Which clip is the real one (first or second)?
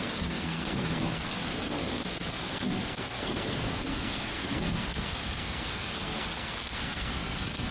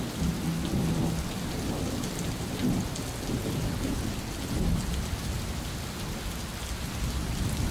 second